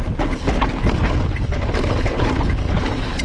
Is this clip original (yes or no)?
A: yes